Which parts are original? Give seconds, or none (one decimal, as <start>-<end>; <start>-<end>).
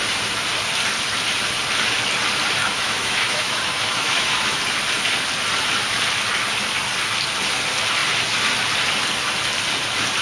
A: 0.0-2.6; 4.6-10.2